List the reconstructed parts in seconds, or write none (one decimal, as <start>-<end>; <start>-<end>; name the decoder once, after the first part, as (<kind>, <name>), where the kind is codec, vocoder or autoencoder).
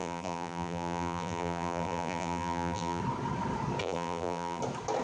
0.0-3.0 (vocoder, BigVGAN v2); 3.8-4.6